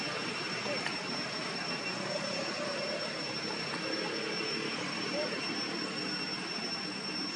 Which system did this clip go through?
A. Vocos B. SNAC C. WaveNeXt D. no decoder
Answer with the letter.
D